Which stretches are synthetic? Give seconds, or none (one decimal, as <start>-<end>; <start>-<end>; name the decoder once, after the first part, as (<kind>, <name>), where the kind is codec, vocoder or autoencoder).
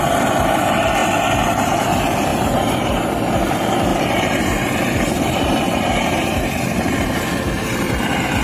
2.3-2.9 (vocoder, BigVGAN v2); 3.9-8.0